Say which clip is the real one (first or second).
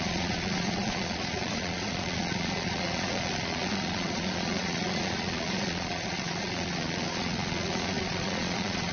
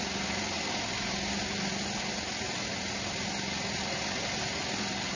second